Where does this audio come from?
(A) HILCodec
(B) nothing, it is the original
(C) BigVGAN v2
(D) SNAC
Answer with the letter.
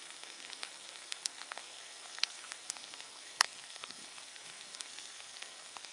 D